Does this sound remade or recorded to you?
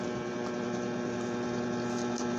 recorded